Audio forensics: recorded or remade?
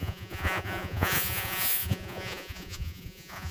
remade